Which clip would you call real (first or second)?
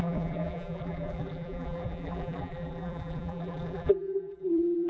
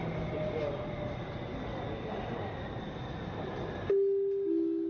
second